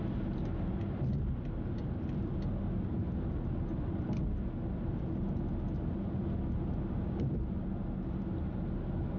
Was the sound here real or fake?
real